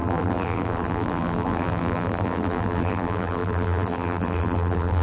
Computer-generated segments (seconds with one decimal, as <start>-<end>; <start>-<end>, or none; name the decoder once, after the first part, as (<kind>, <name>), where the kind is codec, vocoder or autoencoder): 0.0-5.0 (vocoder, BigVGAN v2)